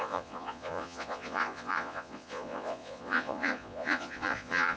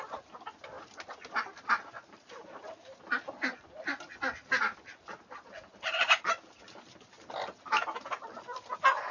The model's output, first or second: first